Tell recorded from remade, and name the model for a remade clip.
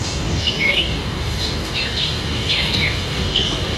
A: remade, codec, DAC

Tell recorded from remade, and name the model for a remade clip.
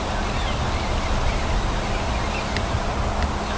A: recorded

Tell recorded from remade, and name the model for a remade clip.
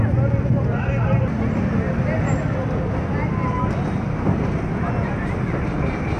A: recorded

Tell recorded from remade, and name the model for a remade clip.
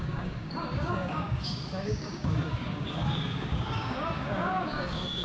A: remade, codec, DAC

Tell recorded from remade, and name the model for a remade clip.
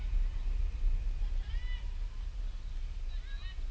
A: recorded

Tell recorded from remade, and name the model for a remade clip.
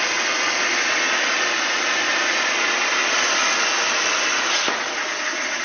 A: recorded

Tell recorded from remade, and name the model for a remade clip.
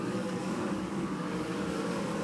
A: remade, codec, DAC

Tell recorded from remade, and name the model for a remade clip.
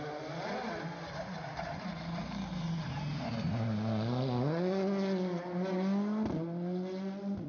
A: recorded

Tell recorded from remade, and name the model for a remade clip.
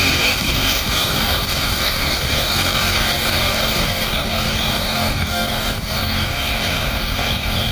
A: remade, codec, DAC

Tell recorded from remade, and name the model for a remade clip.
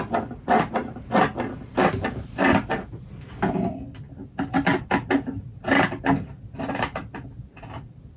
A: recorded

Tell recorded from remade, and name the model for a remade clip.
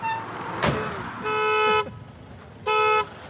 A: recorded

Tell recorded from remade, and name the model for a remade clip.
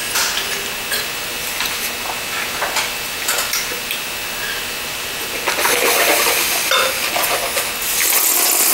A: recorded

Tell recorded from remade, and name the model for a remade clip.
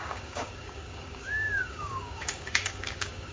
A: remade, codec, DAC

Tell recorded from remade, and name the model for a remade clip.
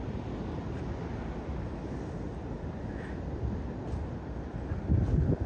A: recorded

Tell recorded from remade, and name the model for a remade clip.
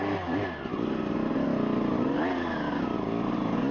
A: recorded